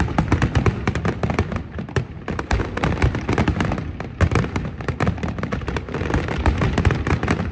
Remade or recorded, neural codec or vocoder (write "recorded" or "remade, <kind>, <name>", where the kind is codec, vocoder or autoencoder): recorded